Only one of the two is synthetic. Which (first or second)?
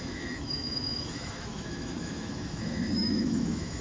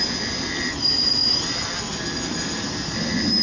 first